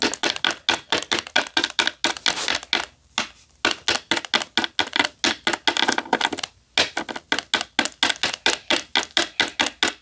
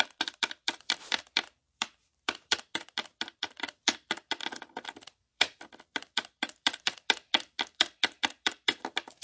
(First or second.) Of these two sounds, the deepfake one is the second